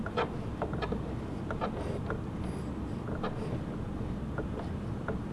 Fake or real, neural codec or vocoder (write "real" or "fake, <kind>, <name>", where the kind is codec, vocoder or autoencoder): real